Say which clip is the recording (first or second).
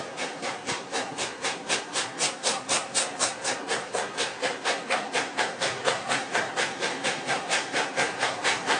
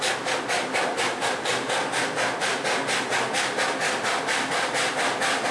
second